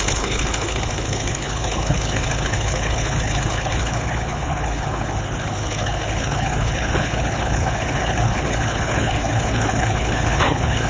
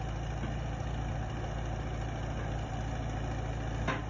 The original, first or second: second